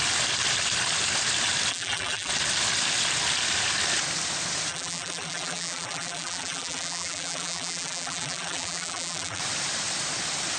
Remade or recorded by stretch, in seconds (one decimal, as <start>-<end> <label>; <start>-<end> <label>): 0.0-1.7 recorded; 1.7-2.3 remade; 2.3-4.7 recorded; 4.7-9.4 remade; 9.4-10.6 recorded